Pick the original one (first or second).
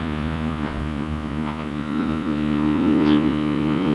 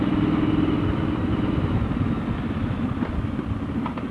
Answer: second